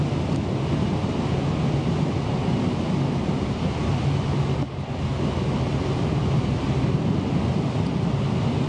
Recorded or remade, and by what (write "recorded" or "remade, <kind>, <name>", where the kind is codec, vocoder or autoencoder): recorded